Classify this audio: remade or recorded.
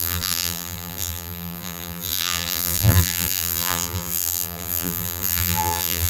remade